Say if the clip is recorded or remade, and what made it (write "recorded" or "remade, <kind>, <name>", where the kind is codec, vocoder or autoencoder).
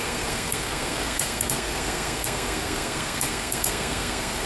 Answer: remade, codec, SNAC